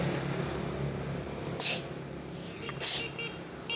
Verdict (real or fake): real